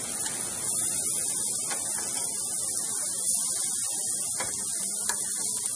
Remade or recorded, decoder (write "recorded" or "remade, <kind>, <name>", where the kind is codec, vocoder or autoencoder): recorded